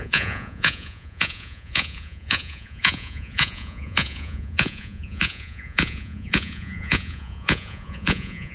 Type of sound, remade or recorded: remade